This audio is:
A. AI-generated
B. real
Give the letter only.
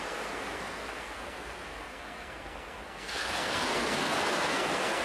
A